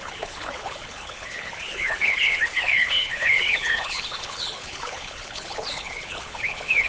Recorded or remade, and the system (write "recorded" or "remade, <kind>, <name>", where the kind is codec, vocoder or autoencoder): remade, codec, HILCodec